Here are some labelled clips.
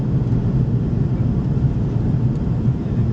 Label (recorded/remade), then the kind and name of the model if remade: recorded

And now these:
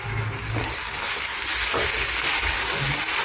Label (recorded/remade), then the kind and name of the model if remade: recorded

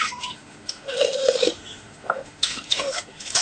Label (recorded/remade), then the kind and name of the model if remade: remade, autoencoder, DAC-VAE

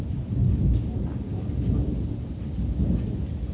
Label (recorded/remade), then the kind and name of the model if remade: recorded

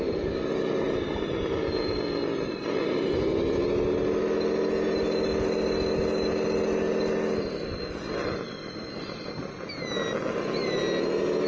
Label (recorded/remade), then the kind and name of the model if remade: recorded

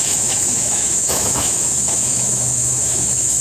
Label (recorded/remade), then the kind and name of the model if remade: remade, autoencoder, DAC-VAE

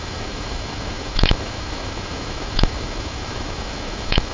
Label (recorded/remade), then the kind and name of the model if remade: remade, autoencoder, DAC-VAE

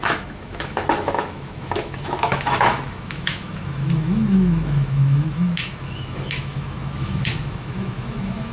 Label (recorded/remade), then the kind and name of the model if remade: remade, autoencoder, DAC-VAE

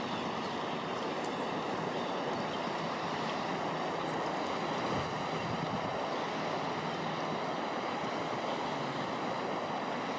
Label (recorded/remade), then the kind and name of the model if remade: recorded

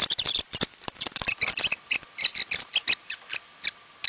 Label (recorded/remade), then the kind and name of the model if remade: recorded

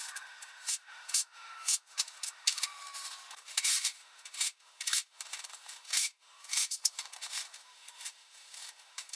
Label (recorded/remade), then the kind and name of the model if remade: remade, autoencoder, DAC-VAE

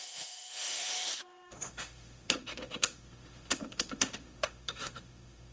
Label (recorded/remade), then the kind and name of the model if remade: remade, autoencoder, DAC-VAE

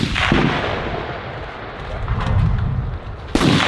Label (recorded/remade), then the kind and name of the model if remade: recorded